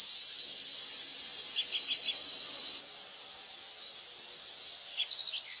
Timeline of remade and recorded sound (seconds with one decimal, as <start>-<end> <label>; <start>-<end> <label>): 0.0-5.6 recorded